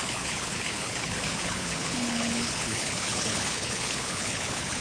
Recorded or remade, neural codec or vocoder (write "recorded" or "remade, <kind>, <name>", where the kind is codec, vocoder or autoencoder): remade, codec, HILCodec